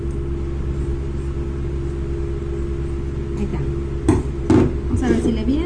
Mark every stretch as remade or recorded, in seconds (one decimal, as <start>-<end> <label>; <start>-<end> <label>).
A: 0.0-5.7 recorded